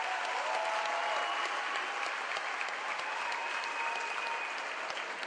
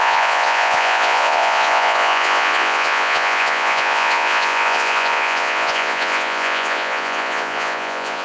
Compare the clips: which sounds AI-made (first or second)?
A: second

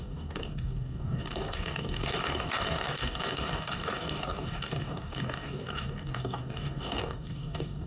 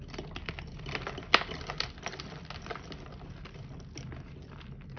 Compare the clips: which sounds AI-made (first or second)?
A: first